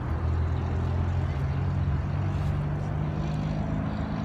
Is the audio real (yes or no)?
yes